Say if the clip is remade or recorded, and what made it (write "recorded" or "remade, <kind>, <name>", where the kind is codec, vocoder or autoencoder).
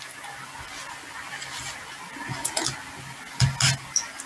recorded